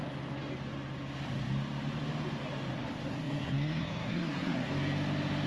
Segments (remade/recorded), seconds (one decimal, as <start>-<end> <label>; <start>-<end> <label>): 0.0-3.1 recorded; 3.1-4.7 remade; 4.7-5.5 recorded